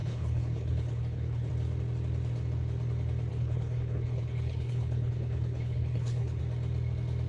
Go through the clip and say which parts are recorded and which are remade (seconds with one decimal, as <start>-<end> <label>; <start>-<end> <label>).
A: 0.0-1.5 remade; 1.5-3.3 recorded; 3.3-6.4 remade; 6.4-7.3 recorded